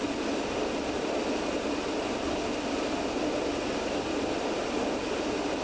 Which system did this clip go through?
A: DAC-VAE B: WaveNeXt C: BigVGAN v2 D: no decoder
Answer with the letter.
D